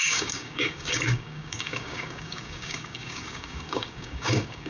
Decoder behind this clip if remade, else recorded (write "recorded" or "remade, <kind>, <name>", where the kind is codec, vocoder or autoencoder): remade, codec, DAC